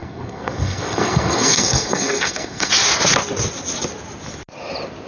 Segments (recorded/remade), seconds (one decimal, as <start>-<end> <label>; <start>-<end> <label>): 0.0-2.7 remade; 2.7-5.1 recorded